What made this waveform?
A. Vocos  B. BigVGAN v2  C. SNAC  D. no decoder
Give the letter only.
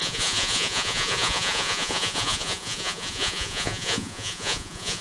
A